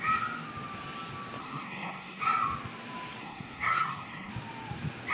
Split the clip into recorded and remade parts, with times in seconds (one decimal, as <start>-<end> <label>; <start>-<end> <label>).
0.0-1.4 recorded; 1.4-2.2 remade; 2.2-3.2 recorded; 3.2-4.3 remade; 4.3-5.1 recorded